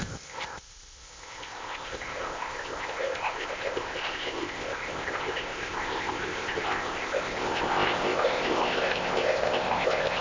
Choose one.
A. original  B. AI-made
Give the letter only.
B